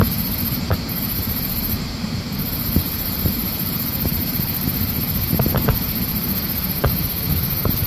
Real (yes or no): no